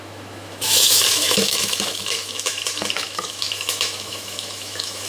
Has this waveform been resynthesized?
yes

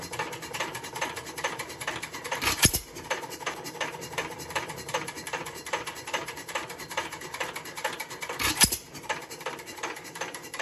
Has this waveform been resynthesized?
yes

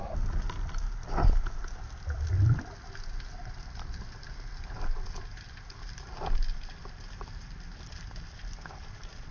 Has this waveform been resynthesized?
no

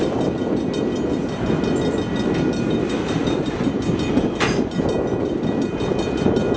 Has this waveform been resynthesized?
no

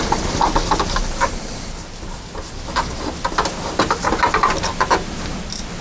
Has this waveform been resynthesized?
no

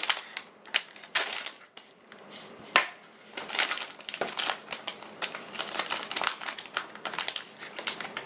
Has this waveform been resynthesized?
yes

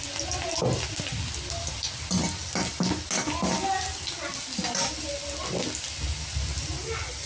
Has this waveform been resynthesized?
no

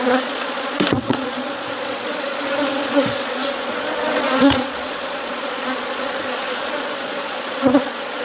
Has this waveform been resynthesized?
yes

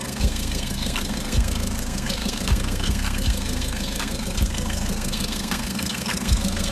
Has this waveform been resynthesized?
yes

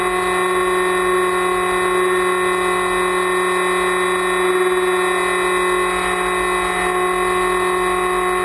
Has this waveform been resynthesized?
no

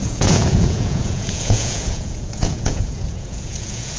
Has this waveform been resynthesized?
yes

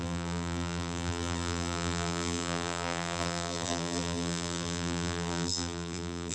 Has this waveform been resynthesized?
yes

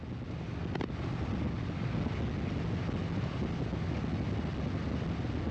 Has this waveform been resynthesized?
no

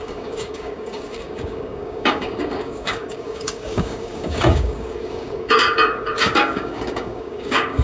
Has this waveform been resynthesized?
yes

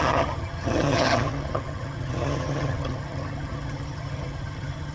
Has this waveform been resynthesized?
yes